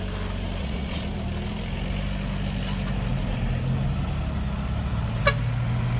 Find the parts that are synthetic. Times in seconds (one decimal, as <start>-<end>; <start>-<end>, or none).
0.6-1.1